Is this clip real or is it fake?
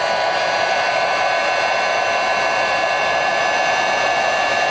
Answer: fake